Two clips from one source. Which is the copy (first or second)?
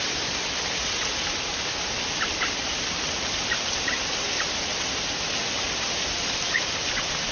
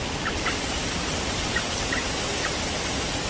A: second